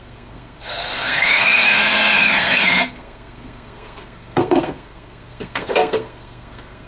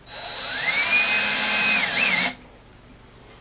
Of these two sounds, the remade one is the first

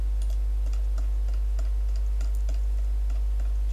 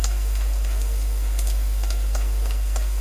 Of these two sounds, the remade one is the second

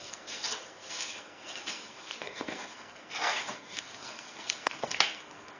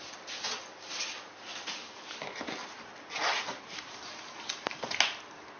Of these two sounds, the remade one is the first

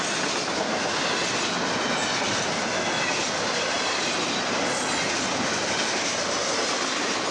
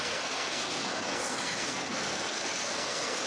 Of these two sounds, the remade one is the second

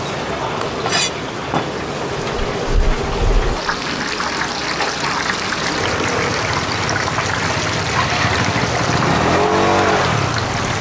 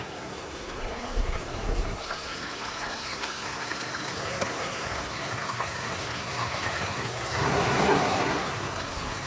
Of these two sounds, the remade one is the second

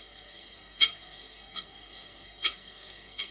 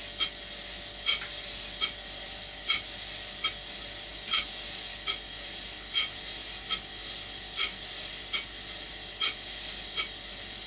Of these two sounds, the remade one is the first